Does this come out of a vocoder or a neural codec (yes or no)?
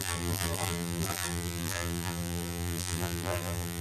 yes